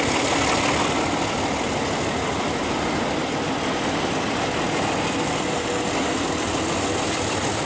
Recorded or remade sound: recorded